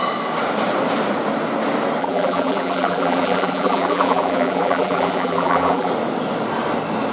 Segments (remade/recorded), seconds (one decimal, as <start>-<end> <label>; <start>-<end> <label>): 0.0-2.0 recorded; 2.0-5.9 remade; 5.9-7.1 recorded